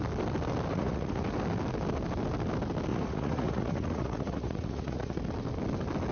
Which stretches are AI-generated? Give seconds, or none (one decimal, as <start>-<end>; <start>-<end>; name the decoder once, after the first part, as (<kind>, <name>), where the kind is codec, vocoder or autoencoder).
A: 0.7-1.2 (vocoder, Vocos); 2.9-5.2